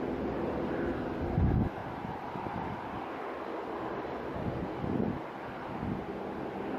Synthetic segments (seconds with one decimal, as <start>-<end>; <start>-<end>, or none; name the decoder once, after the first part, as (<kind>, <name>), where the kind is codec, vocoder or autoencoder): 1.8-2.7 (vocoder, BigVGAN v2)